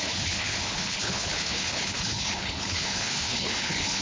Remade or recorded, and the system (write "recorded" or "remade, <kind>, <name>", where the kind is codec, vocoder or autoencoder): remade, codec, HILCodec